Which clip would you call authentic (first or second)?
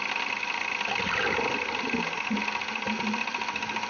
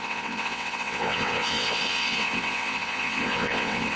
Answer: first